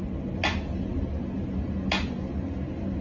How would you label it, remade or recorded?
recorded